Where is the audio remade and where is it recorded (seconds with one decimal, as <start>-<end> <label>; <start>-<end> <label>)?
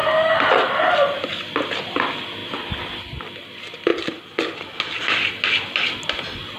0.0-6.6 recorded